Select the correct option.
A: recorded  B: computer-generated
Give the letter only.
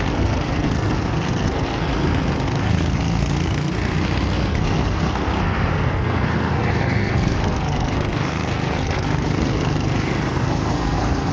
B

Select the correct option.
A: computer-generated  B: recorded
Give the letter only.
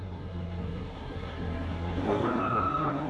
A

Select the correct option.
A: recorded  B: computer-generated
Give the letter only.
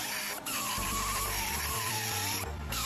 B